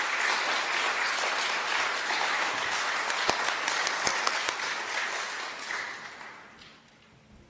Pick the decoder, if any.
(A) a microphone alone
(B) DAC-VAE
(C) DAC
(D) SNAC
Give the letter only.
A